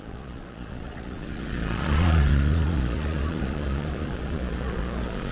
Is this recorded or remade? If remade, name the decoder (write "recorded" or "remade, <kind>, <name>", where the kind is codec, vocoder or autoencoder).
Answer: remade, vocoder, Vocos